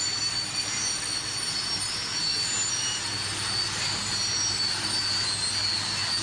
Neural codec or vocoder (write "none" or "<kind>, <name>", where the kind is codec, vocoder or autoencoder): none